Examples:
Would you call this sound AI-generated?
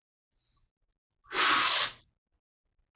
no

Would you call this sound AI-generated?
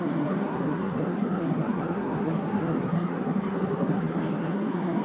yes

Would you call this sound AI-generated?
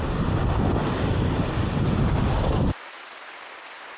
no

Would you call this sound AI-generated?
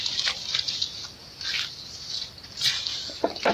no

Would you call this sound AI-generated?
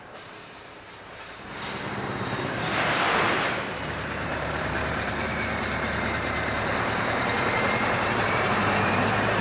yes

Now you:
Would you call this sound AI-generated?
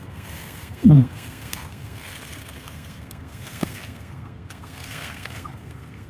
yes